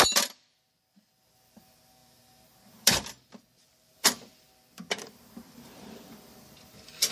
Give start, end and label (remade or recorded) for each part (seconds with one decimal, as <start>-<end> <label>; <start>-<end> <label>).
0.0-7.1 remade